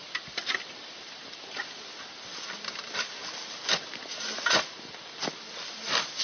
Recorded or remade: recorded